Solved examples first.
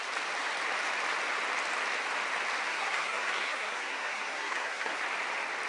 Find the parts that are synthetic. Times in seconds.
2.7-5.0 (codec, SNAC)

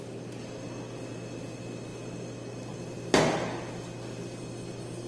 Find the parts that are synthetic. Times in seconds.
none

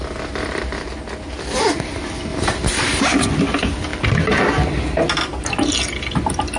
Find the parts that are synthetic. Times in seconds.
none

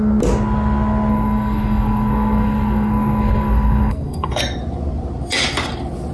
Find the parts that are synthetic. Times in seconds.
1.1-4.4 (codec, SNAC)

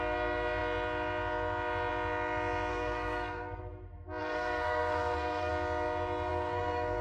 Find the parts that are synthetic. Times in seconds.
2.7-3.6 (codec, SNAC); 4.2-5.5; 6.3-7.0